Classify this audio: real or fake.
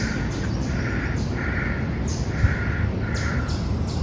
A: real